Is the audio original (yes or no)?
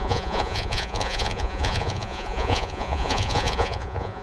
no